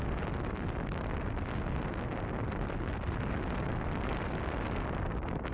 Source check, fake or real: real